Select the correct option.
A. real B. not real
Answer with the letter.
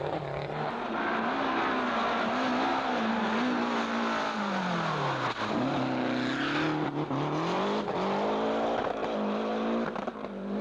A